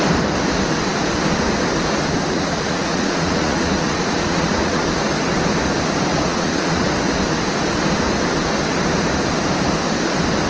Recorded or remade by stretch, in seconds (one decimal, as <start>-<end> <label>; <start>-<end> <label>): 0.0-2.3 recorded; 2.3-4.8 remade; 4.8-6.1 recorded; 6.1-6.9 remade; 6.9-10.5 recorded